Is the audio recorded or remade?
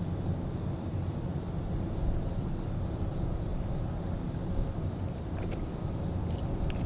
recorded